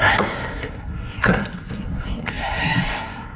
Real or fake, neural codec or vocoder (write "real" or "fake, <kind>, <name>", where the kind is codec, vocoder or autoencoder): fake, codec, SNAC